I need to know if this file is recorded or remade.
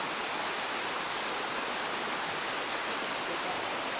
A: recorded